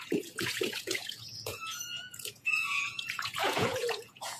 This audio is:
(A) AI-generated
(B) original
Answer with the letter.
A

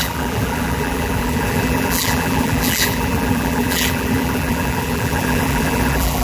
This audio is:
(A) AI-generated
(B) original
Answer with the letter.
A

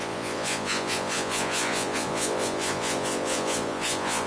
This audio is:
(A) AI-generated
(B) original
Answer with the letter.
A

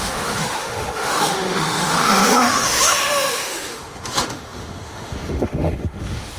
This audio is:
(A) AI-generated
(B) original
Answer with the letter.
A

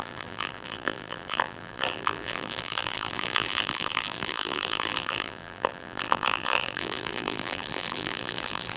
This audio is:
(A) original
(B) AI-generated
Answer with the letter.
B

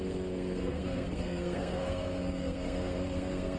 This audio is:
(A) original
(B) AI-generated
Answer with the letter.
B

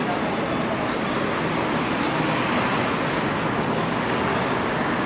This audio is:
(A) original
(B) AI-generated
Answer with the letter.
A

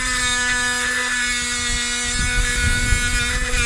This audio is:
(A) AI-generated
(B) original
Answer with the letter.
B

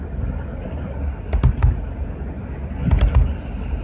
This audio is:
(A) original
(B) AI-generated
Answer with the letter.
A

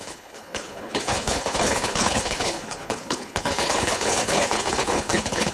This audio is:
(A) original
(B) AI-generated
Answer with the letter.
B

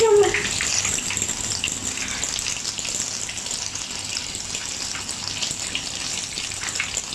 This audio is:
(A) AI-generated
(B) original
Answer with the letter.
B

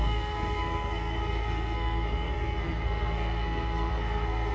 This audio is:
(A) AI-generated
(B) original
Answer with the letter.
A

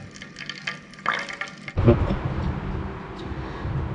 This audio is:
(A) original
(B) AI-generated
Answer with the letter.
A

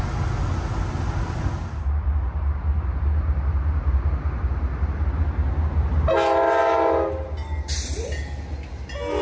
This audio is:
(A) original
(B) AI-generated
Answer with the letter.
A